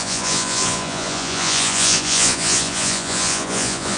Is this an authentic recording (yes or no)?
no